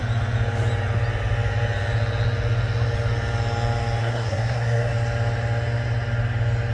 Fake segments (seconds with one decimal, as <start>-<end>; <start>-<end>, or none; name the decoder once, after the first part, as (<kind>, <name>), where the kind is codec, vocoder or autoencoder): 4.0-4.9 (codec, SNAC)